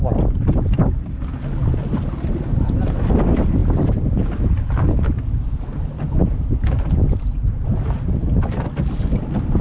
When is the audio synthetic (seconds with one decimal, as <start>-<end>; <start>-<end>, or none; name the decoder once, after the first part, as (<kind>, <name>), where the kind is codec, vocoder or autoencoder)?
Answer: none